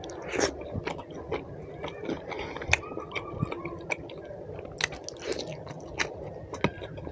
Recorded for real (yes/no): yes